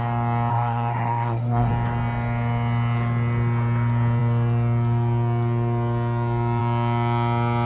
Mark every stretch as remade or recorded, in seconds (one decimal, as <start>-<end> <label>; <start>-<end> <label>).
0.0-0.5 recorded; 0.5-1.7 remade; 1.7-7.7 recorded